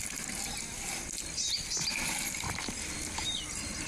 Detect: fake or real real